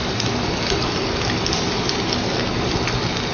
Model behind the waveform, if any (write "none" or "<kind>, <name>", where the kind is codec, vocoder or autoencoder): none